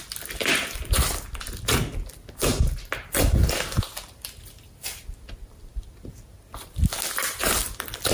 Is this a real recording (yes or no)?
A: yes